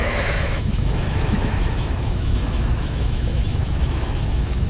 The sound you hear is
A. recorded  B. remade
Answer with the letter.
B